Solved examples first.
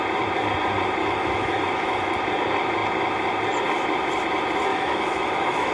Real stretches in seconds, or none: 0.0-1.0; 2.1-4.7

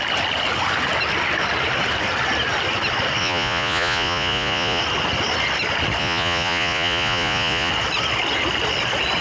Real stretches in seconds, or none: 0.0-3.2; 4.8-6.0; 7.7-9.2

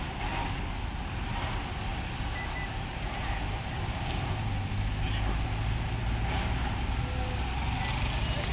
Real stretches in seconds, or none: 0.0-1.9; 4.3-8.5

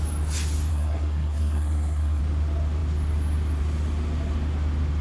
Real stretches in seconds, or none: 0.0-0.7; 2.2-5.0

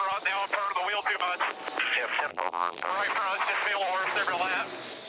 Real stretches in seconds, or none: 0.0-2.3; 2.9-5.1

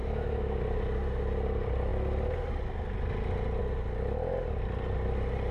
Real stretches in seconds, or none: 0.6-5.5

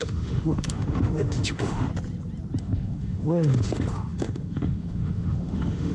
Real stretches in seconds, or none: 1.9-2.6

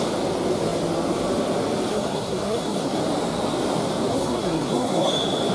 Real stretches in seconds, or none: 0.0-1.9; 3.0-4.1; 5.1-5.5